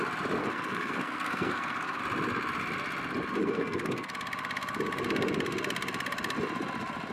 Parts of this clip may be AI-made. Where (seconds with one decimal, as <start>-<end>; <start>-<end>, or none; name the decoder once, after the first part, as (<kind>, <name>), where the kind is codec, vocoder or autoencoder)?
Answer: 0.4-2.0 (codec, SNAC); 3.4-4.1